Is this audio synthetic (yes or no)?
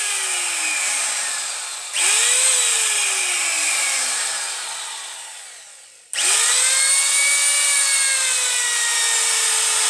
no